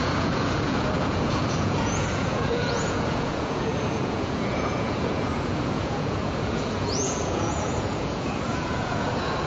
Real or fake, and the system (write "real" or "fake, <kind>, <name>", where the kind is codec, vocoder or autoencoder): fake, vocoder, Vocos